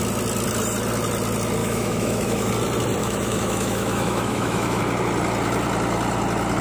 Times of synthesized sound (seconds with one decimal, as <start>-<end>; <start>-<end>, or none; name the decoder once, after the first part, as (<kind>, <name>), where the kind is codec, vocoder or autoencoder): 1.6-2.5 (autoencoder, DAC-VAE); 3.0-4.8